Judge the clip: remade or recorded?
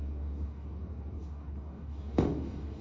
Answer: remade